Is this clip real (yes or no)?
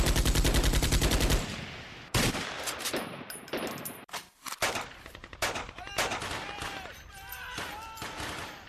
no